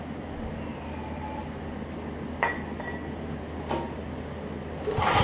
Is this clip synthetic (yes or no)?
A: no